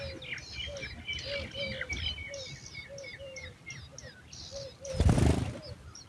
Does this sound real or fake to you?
real